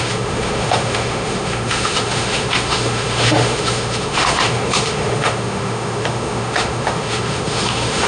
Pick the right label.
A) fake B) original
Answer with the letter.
A